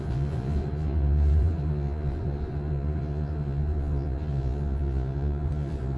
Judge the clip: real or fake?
fake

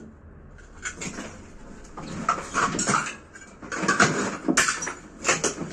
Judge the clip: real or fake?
real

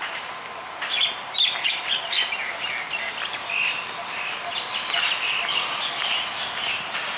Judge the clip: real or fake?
real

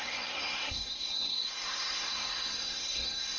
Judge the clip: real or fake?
fake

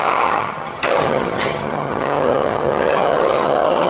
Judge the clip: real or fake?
fake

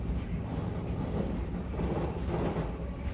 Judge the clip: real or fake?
real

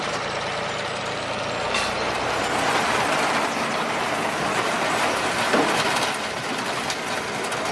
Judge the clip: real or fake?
real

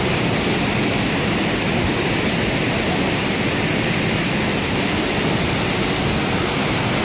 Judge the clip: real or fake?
real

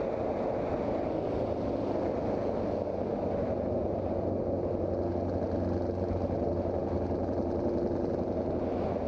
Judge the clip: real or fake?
real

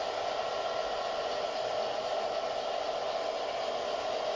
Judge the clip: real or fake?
real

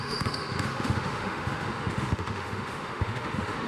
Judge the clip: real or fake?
fake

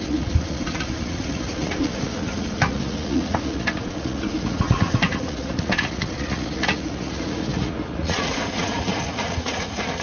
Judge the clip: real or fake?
fake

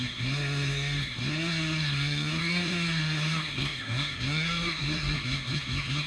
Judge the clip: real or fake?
fake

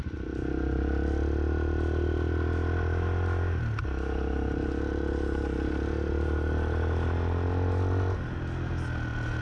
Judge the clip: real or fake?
real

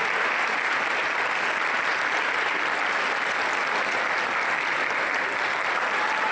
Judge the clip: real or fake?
real